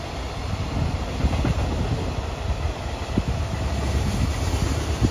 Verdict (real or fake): real